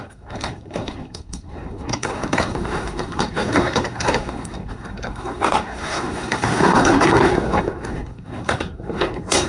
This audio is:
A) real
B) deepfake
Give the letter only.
B